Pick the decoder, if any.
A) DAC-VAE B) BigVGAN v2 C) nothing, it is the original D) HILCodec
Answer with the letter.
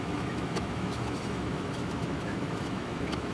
A